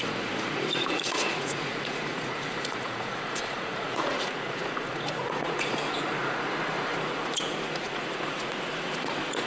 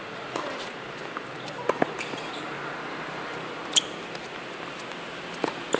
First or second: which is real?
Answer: second